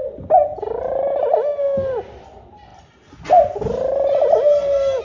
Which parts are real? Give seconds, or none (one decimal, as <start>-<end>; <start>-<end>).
0.0-0.5; 1.1-5.0